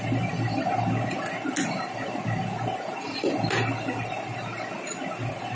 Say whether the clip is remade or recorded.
recorded